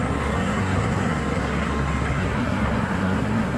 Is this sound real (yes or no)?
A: no